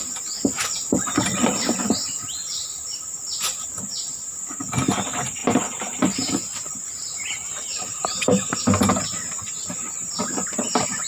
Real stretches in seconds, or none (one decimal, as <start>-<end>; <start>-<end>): 0.0-5.4; 8.6-11.1